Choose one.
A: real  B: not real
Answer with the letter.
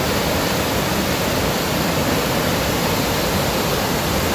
A